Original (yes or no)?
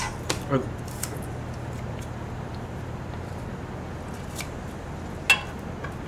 yes